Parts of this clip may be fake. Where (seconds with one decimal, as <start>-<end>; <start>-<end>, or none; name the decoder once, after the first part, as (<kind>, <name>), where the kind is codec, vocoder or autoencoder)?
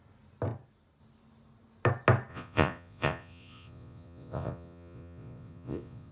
2.3-6.1 (vocoder, Vocos)